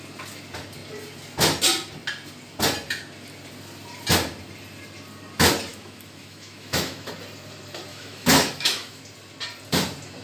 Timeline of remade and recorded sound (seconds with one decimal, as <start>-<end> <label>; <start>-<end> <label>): 0.0-5.7 recorded; 5.7-7.1 remade; 7.1-7.9 recorded; 7.9-9.0 remade; 9.0-10.2 recorded